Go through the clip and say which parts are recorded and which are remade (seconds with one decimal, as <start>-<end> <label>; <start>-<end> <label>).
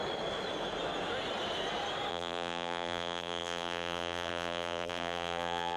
0.0-2.1 recorded; 2.1-5.8 remade